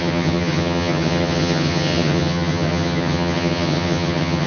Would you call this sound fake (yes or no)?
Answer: yes